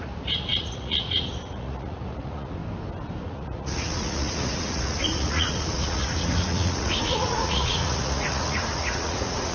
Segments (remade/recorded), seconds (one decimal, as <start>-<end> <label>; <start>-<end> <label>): 0.0-2.6 remade; 2.6-3.2 recorded; 3.2-9.5 remade